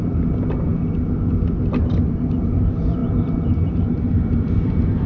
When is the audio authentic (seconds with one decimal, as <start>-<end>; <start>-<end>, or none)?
0.7-2.0